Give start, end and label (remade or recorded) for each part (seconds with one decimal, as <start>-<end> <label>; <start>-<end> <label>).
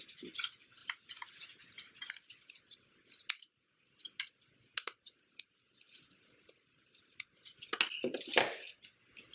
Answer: 0.0-9.3 recorded